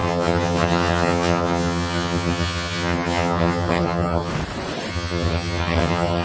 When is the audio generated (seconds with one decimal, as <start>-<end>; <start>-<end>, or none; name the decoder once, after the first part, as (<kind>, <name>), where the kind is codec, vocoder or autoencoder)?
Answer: 0.0-4.3 (vocoder, HiFi-GAN); 4.9-6.2